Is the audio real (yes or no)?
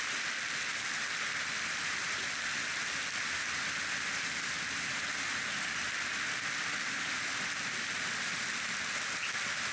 yes